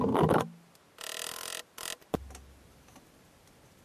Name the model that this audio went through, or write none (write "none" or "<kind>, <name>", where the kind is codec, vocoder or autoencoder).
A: none